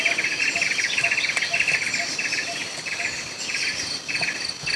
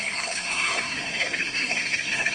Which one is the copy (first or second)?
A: second